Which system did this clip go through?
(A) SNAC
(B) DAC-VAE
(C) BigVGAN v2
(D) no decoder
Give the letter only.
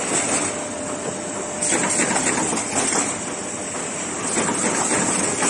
D